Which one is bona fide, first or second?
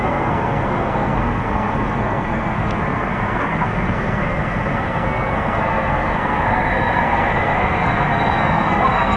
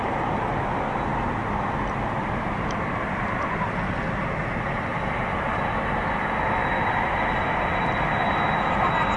second